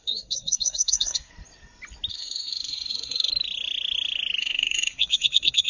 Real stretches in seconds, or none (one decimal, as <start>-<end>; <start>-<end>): 1.3-2.1; 3.3-4.4